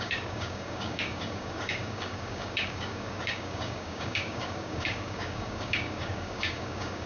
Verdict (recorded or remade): remade